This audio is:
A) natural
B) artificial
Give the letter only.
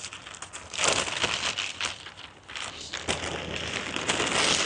A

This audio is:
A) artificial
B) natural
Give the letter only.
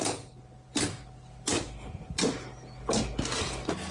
B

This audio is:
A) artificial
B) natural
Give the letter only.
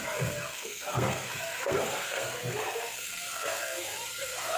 A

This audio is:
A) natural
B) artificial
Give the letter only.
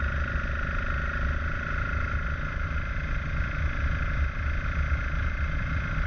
A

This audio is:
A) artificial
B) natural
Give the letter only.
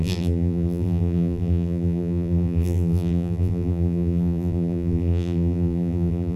A